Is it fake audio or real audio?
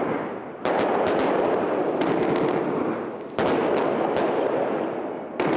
real